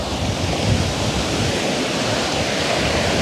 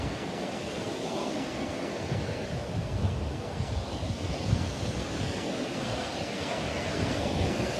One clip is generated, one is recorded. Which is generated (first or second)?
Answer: second